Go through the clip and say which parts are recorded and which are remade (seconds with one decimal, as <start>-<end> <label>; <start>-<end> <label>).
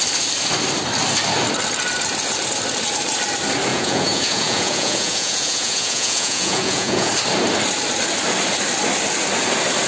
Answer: 0.0-3.7 recorded; 3.7-7.1 remade; 7.1-9.9 recorded